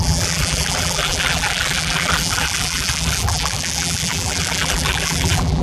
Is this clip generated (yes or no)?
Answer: yes